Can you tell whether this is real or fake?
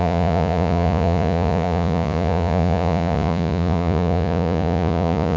fake